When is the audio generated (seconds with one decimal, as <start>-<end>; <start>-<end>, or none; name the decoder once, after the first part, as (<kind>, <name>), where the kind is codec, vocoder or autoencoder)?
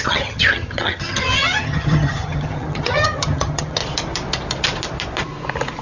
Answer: 0.0-3.8 (vocoder, HiFi-GAN)